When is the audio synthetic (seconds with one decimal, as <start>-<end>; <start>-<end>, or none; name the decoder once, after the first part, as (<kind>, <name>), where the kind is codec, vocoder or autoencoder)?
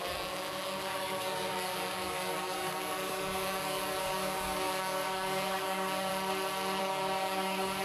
0.0-6.1 (codec, DAC); 6.8-7.8